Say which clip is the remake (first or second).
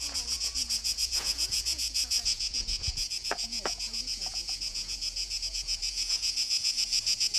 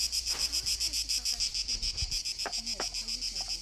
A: first